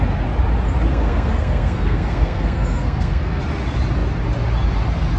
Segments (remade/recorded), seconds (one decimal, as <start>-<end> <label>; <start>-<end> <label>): 0.0-0.9 recorded; 0.9-3.4 remade; 3.4-5.2 recorded